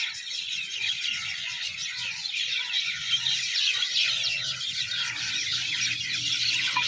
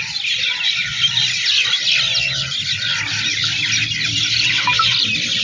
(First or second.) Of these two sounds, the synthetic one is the first